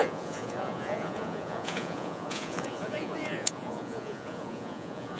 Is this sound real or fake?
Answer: fake